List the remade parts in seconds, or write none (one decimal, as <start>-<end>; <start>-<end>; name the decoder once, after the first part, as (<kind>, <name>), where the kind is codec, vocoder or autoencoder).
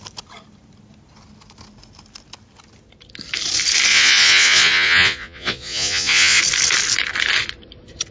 3.9-6.4 (vocoder, Vocos)